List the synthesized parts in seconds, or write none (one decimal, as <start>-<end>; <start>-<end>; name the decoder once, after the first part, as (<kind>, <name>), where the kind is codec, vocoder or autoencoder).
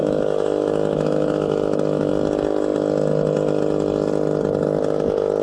0.0-2.1 (autoencoder, DAC-VAE)